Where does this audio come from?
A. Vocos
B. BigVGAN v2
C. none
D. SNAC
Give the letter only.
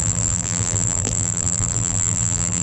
B